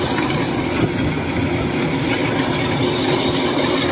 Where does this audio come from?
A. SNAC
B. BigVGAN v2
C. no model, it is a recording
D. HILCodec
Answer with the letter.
C